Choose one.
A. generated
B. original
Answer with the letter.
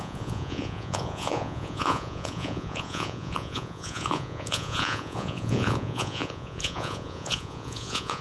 A